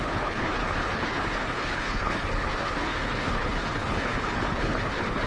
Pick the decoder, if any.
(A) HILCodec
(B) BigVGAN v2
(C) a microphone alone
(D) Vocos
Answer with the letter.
A